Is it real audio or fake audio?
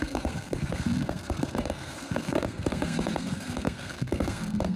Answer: fake